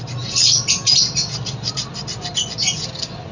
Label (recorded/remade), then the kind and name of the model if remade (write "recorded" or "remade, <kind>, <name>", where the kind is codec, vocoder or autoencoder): recorded